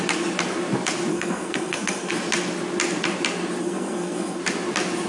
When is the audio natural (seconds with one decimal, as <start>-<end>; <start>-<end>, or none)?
0.0-1.1; 2.1-3.6; 4.4-5.1

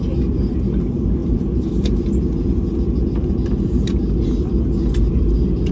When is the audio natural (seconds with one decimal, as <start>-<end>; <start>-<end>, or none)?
0.0-5.7